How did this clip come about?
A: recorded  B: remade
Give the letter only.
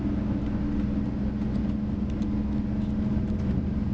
A